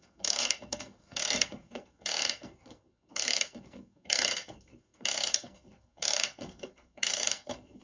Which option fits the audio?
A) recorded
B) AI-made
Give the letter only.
B